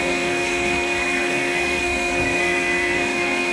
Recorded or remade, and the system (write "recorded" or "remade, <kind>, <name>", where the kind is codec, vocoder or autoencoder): remade, codec, SNAC